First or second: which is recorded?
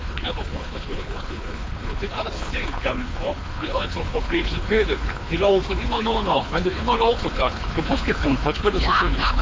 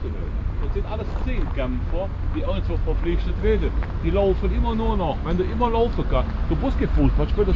second